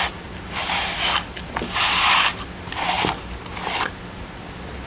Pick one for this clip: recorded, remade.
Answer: recorded